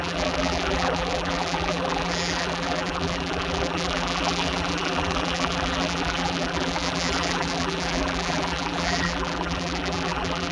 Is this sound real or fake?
fake